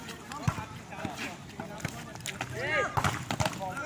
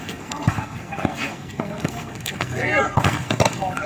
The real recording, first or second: first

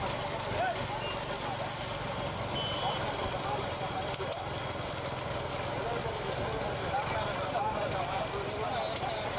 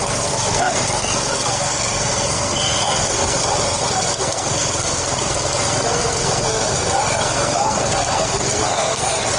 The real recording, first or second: first